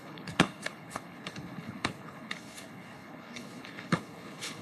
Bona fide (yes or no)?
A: no